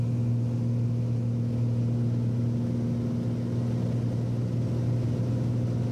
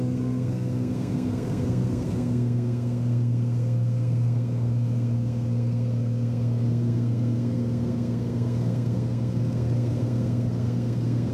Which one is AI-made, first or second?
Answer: second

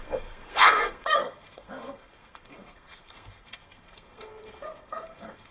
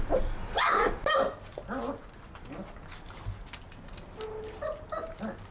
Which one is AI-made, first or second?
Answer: first